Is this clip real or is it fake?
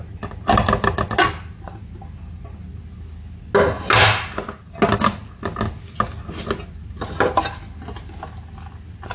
real